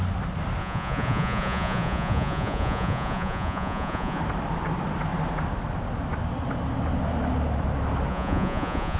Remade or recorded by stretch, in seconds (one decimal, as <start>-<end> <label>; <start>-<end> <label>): 0.0-0.6 recorded; 0.6-4.2 remade; 4.2-8.1 recorded; 8.1-9.0 remade